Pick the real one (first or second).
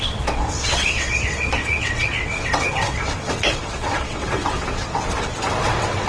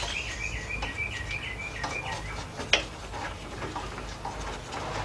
second